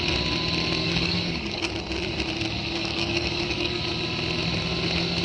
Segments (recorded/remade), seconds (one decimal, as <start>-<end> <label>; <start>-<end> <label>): 0.0-0.8 recorded; 0.8-1.7 remade; 1.7-2.8 recorded; 2.8-3.8 remade; 3.8-5.2 recorded

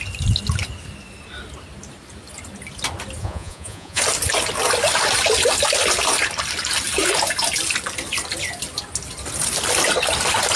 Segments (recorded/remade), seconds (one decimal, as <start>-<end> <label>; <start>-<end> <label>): 0.0-3.2 recorded; 3.2-4.0 remade; 4.0-10.6 recorded

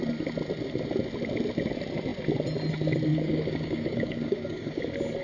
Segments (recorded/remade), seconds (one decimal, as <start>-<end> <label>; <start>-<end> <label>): 0.0-3.1 recorded; 3.1-4.8 remade; 4.8-5.2 recorded

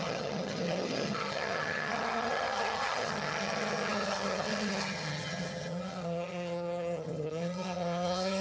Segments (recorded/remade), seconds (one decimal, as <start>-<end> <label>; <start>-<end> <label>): 0.0-8.4 remade

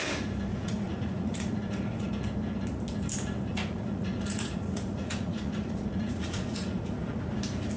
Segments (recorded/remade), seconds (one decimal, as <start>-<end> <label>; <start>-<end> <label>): 0.0-0.5 recorded; 0.5-2.1 remade; 2.1-3.5 recorded; 3.5-7.3 remade; 7.3-7.8 recorded

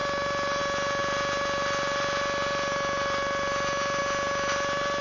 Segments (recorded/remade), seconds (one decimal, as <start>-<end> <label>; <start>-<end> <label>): 0.0-5.0 recorded

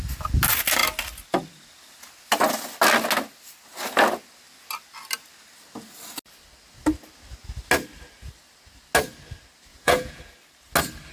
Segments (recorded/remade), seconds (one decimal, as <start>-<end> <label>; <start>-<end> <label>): 0.0-9.7 recorded; 9.7-10.2 remade; 10.2-11.1 recorded